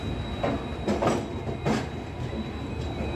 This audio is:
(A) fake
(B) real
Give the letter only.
B